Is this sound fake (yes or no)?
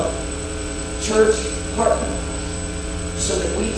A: yes